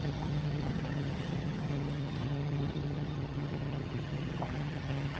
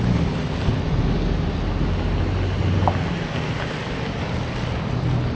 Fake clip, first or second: first